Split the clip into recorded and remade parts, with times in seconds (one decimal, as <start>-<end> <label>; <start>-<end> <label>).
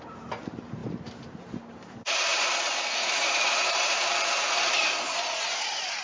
0.0-6.0 remade